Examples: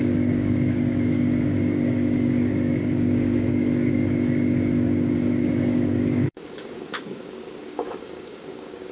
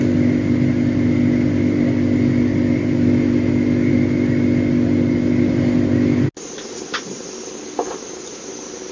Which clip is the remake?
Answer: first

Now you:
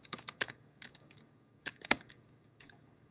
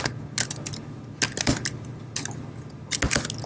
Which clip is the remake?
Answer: first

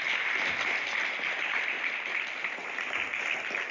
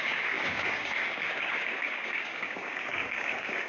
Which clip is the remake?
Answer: second